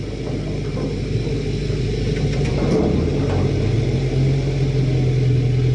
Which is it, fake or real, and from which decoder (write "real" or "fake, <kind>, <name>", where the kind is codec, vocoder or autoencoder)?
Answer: real